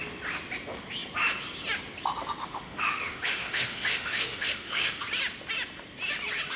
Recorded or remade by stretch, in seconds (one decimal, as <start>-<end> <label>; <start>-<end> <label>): 0.0-2.4 recorded; 2.4-5.0 remade; 5.0-6.6 recorded